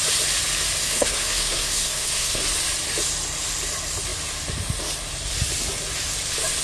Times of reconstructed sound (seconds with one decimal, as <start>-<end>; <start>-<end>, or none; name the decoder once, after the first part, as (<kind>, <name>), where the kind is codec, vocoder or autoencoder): 0.8-2.4 (codec, SNAC)